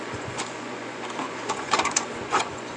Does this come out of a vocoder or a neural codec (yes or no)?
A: yes